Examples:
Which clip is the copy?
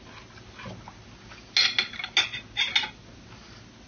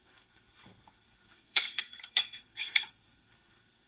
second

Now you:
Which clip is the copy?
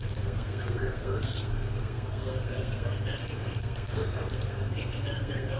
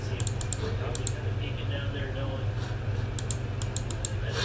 first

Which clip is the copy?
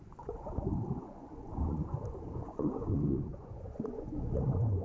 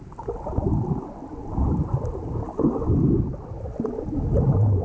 first